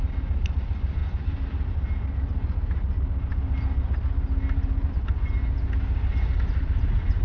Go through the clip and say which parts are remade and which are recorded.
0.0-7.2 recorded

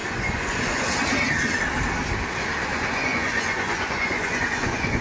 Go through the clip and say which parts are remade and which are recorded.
0.0-0.9 remade; 0.9-2.7 recorded; 2.7-5.0 remade

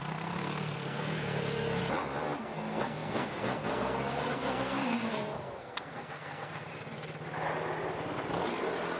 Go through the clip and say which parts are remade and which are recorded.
0.0-1.8 remade; 1.8-2.4 recorded; 2.4-6.7 remade; 6.7-9.0 recorded

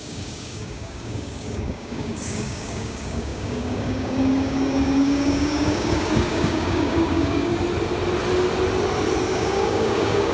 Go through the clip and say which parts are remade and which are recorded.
0.0-7.5 remade; 7.5-9.3 recorded; 9.3-10.3 remade

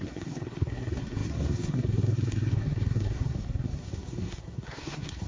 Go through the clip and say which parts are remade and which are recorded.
0.0-5.3 remade

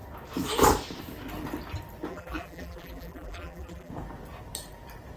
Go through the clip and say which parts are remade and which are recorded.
0.0-2.1 recorded; 2.1-3.9 remade; 3.9-5.2 recorded

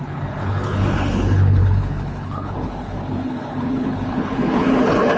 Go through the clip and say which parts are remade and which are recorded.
0.0-5.2 remade

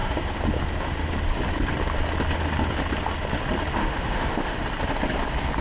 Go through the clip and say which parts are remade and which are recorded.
0.0-3.8 recorded; 3.8-4.6 remade; 4.6-5.6 recorded